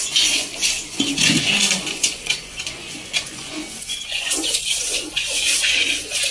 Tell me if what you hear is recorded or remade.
remade